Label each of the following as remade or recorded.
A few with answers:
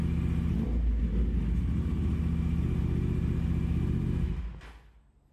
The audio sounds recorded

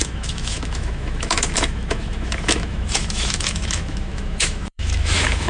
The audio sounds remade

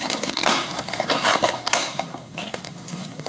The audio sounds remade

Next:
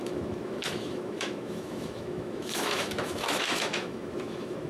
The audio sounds remade